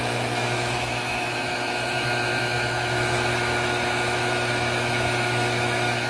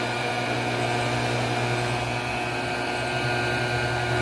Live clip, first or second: second